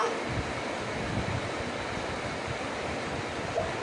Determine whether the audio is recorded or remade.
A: recorded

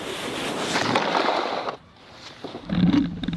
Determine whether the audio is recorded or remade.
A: recorded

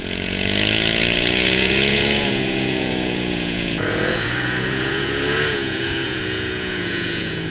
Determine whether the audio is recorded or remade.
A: remade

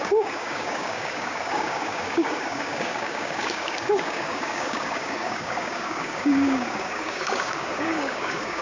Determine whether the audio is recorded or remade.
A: remade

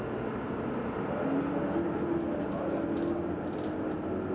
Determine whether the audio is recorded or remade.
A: recorded